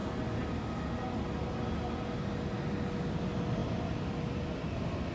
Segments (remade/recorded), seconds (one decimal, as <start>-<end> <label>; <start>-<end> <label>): 0.0-5.1 recorded